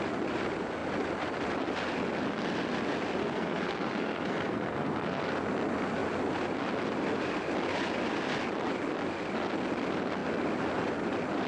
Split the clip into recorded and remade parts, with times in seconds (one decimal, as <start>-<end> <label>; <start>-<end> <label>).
0.0-3.2 recorded; 3.2-5.2 remade; 5.2-11.5 recorded